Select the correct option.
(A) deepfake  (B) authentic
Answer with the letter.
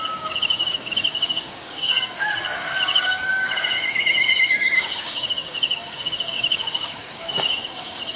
A